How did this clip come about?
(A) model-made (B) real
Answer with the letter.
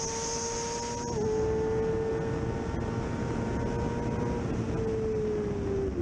B